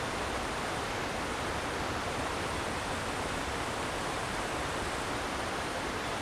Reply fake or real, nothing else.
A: fake